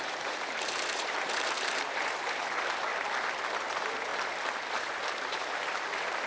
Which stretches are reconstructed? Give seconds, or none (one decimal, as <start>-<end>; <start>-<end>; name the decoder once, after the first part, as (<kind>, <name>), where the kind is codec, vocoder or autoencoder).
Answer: 0.0-2.9 (vocoder, BigVGAN v2); 3.5-4.1; 4.7-6.3

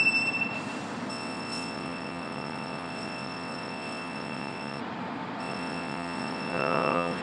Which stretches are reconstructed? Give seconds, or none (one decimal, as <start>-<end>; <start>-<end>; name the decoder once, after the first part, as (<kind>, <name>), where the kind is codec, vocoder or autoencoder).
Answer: 1.1-4.8 (vocoder, WaveNeXt); 5.4-7.2

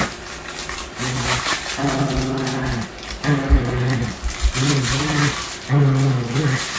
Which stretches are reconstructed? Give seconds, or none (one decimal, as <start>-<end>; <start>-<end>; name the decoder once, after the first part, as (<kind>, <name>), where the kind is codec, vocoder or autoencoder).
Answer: none

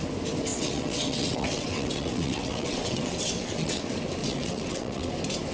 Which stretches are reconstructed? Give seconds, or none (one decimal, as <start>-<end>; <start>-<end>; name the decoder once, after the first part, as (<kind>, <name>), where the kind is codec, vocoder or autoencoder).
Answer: 0.5-3.8 (vocoder, WaveNeXt); 4.2-5.1

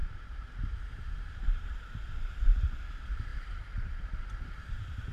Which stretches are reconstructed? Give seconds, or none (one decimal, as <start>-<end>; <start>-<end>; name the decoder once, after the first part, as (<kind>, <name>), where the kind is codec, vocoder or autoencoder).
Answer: 0.0-5.1 (vocoder, BigVGAN v2)

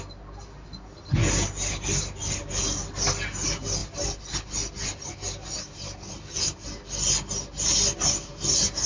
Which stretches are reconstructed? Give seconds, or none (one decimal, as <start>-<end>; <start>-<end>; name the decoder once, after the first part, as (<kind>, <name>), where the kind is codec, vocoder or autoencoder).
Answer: none